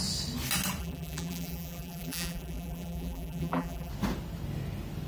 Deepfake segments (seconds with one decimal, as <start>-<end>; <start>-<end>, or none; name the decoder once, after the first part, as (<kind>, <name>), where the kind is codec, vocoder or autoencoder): 0.8-3.9 (vocoder, BigVGAN v2)